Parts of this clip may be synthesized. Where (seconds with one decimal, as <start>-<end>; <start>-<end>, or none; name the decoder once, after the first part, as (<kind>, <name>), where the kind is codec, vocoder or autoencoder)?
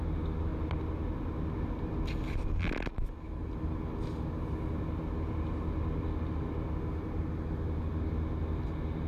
none